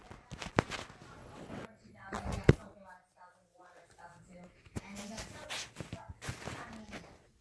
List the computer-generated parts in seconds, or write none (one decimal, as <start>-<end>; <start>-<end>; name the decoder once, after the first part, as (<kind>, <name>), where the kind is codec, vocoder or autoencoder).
1.2-2.0 (vocoder, WaveNeXt)